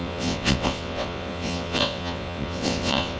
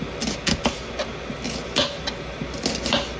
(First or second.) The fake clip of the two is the first